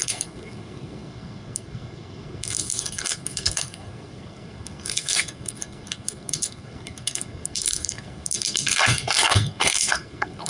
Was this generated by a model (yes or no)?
yes